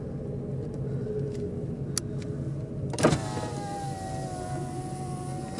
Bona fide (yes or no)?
yes